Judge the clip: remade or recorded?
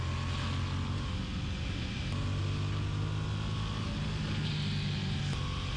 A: recorded